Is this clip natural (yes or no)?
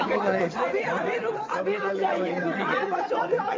no